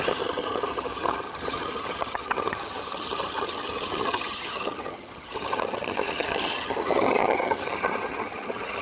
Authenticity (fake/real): fake